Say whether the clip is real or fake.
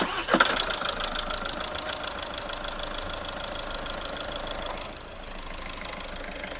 real